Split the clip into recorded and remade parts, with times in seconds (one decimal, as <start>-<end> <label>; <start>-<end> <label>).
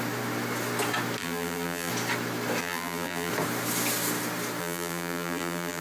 0.0-1.2 recorded; 1.2-1.9 remade; 1.9-2.6 recorded; 2.6-3.3 remade; 3.3-4.6 recorded; 4.6-5.8 remade